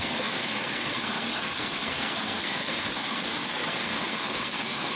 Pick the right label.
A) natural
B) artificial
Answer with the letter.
B